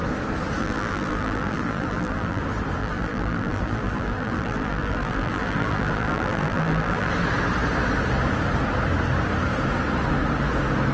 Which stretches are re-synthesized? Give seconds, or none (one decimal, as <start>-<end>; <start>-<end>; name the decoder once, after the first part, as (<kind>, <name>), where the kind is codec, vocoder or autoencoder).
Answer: 0.6-2.4 (vocoder, BigVGAN v2); 2.8-7.1